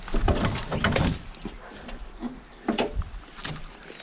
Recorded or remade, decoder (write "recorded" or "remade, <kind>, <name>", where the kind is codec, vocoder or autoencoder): recorded